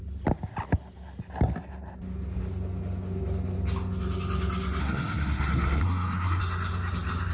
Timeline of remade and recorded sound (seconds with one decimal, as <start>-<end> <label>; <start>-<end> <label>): 0.0-4.8 recorded; 4.8-6.4 remade; 6.4-7.3 recorded